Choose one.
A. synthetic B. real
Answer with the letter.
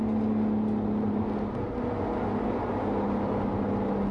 B